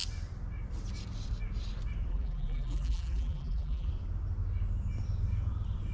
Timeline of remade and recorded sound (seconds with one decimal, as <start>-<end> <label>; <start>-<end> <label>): 0.0-2.1 recorded; 2.1-3.9 remade; 3.9-5.9 recorded

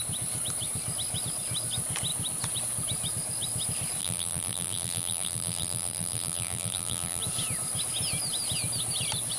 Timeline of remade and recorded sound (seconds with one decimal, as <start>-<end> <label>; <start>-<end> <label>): 0.0-4.0 recorded; 4.0-7.2 remade; 7.2-9.4 recorded

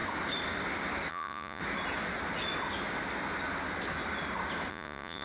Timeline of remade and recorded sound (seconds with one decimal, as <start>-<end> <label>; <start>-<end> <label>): 0.0-1.1 recorded; 1.1-1.6 remade; 1.6-4.7 recorded; 4.7-5.2 remade

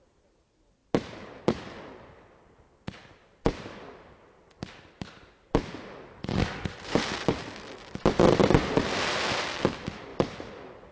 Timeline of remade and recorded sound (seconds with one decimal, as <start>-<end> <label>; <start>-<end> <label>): 0.0-10.9 recorded

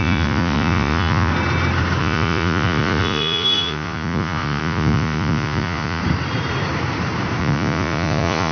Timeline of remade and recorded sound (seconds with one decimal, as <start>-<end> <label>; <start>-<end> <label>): 0.0-1.3 remade; 1.3-2.0 recorded; 2.0-6.0 remade; 6.0-7.4 recorded; 7.4-8.5 remade

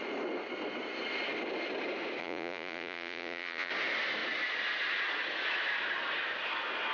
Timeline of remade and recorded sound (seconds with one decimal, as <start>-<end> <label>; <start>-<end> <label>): 0.0-2.2 recorded; 2.2-3.7 remade; 3.7-6.9 recorded

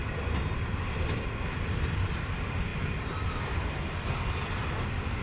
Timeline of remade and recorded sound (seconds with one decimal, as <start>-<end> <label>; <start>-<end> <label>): 0.0-5.2 recorded